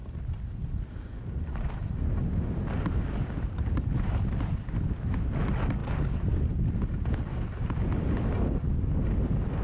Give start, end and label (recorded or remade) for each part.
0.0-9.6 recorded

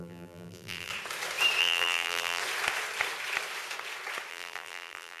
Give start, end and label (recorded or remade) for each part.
0.0-0.9 remade; 0.9-1.6 recorded; 1.6-2.4 remade; 2.4-4.3 recorded; 4.3-5.2 remade